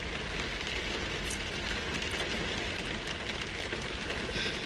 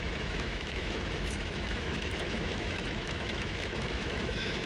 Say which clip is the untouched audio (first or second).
first